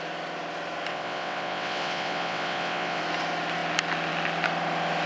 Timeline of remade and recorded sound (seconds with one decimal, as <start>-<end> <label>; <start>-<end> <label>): 0.0-0.9 recorded; 0.9-3.0 remade; 3.0-5.1 recorded